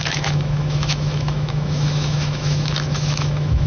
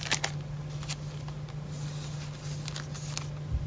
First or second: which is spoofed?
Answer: first